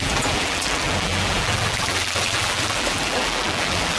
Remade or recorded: remade